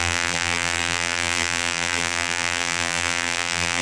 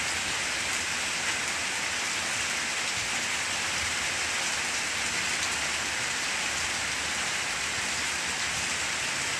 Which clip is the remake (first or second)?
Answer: first